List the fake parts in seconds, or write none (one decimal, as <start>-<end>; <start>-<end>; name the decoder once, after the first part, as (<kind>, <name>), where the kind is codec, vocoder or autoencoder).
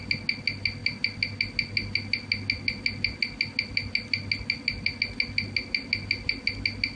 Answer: none